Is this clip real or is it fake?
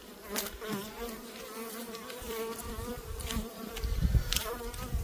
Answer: fake